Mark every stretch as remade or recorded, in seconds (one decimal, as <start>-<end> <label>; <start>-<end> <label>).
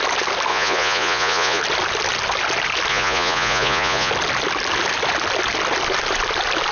0.0-0.5 recorded; 0.5-1.6 remade; 1.6-2.9 recorded; 2.9-4.1 remade; 4.1-6.7 recorded